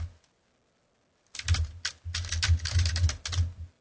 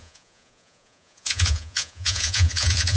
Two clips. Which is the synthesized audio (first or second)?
second